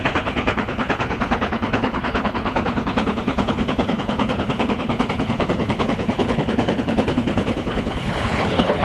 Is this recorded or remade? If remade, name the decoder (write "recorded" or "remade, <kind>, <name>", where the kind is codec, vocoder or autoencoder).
remade, codec, HILCodec